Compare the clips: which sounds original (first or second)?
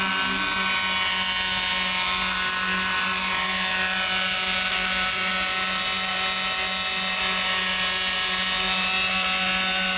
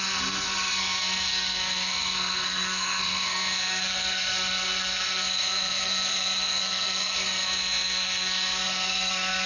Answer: first